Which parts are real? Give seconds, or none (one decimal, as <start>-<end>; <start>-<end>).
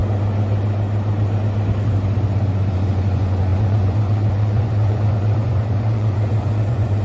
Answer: 0.0-2.7